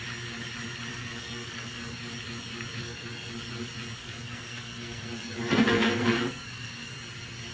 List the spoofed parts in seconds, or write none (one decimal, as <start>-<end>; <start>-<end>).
0.9-2.0; 2.8-3.3; 4.0-6.9